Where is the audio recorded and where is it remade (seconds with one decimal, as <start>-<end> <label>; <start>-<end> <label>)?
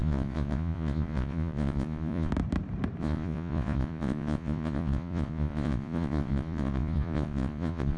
0.0-2.3 remade; 2.3-3.0 recorded; 3.0-8.0 remade